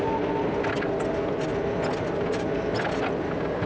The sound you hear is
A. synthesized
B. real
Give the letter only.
B